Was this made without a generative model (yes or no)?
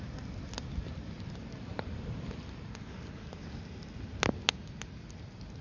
yes